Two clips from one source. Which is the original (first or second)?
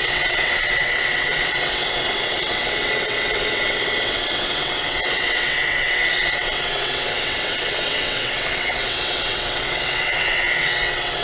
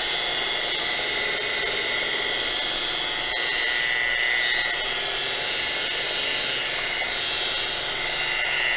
second